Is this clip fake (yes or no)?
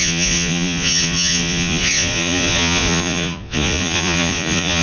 yes